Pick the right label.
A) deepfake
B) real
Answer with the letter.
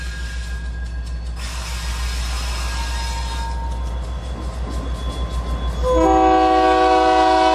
B